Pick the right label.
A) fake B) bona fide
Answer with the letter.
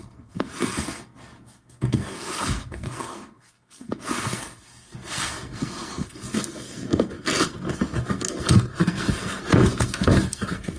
A